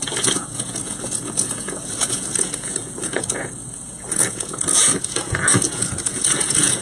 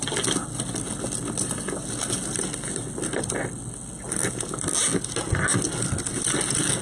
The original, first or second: second